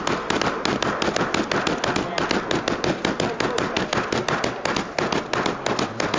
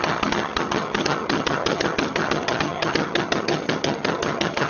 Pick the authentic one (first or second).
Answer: first